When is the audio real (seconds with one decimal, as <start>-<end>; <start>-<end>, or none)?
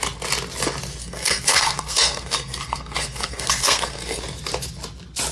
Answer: 0.0-1.0; 4.2-5.3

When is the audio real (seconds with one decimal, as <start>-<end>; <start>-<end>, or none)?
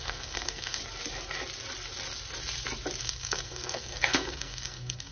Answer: 0.8-3.0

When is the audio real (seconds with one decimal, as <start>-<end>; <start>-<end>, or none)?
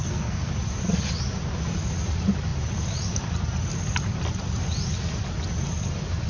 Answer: 0.5-6.3